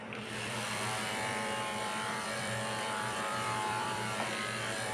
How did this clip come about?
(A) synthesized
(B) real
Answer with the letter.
A